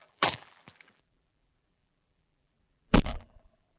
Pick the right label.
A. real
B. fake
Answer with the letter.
B